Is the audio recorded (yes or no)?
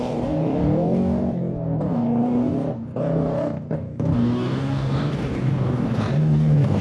no